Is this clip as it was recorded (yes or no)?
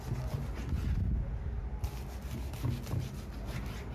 yes